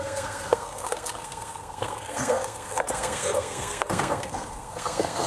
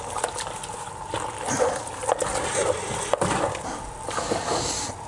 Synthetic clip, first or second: first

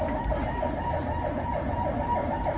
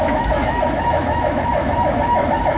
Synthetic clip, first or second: second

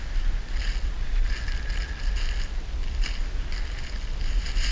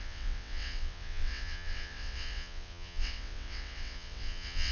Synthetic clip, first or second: second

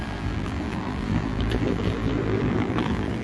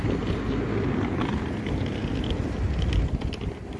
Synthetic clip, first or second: first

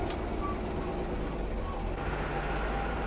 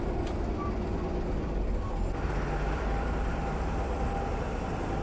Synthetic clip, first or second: second